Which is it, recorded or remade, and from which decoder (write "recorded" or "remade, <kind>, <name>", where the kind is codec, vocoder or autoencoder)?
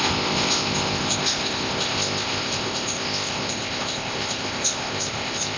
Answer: remade, codec, ZipCodec